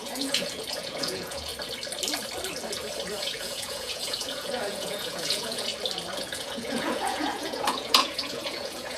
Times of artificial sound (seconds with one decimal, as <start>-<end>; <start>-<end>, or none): 0.0-1.5; 3.2-5.7; 6.2-9.0